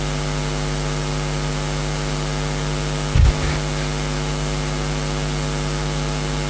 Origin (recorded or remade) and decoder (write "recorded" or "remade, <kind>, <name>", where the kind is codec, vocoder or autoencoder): recorded